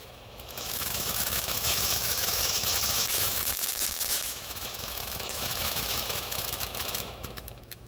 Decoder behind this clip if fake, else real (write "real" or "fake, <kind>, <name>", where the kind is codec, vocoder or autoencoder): fake, autoencoder, DAC-VAE